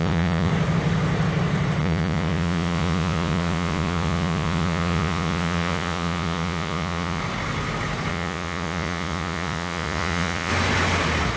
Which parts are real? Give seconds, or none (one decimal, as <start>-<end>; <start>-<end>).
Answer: 0.5-1.8; 7.2-8.1; 10.5-11.4